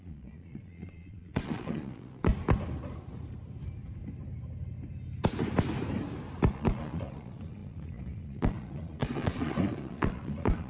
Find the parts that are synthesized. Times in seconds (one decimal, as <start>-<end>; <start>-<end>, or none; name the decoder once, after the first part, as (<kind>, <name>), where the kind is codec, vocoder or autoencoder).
0.0-2.3 (vocoder, Vocos); 6.5-10.7